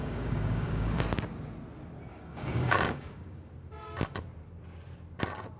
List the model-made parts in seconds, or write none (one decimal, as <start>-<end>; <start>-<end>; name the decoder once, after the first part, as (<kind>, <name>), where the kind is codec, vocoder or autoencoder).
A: 0.0-1.0 (codec, DAC); 2.1-3.5